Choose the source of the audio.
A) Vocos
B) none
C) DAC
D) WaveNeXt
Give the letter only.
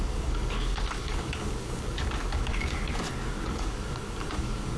C